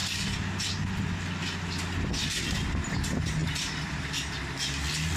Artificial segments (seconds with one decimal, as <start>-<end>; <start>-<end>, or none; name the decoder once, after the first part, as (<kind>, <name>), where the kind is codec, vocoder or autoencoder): 3.4-4.3 (vocoder, BigVGAN v2)